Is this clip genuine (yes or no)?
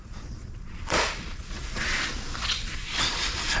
no